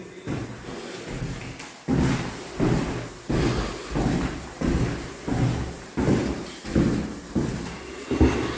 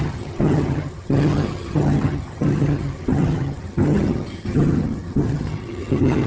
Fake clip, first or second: second